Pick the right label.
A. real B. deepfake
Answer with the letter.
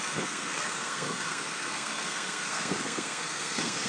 B